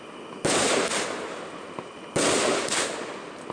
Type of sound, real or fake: real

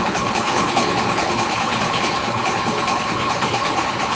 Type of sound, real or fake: fake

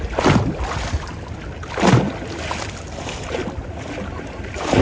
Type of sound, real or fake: real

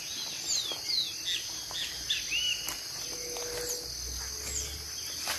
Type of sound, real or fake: real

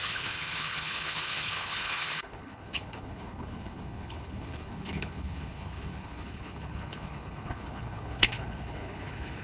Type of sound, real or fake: fake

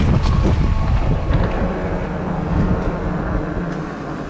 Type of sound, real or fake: real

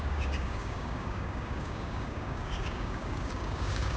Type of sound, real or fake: fake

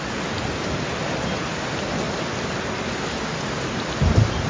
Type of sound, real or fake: real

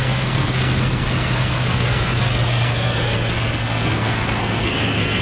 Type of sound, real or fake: fake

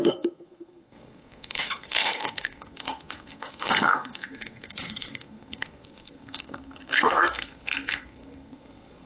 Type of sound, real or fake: fake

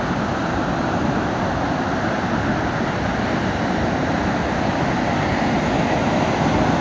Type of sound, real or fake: real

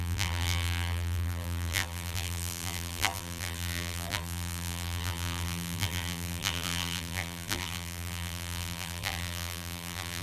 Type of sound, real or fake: fake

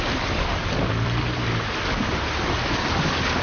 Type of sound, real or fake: fake